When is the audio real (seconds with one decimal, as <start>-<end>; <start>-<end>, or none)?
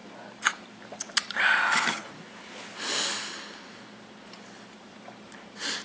0.0-5.8